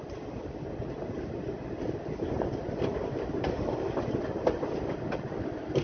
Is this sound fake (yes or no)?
no